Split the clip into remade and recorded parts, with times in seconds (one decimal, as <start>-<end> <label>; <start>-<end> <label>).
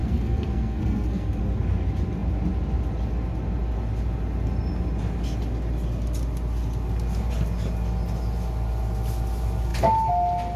0.0-1.4 remade; 1.4-10.6 recorded